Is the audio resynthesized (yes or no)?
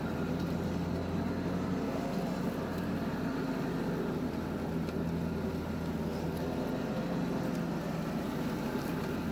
no